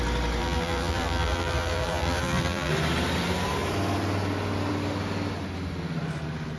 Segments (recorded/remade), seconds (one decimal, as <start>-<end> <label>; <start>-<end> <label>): 0.0-0.4 recorded; 0.4-2.7 remade; 2.7-6.6 recorded